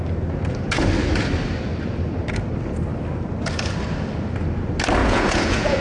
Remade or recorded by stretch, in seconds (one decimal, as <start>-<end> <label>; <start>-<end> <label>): 0.0-5.0 recorded; 5.0-5.8 remade